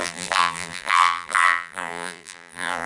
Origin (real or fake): fake